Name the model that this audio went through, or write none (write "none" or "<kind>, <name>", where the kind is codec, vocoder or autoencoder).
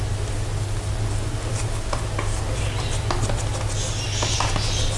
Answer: none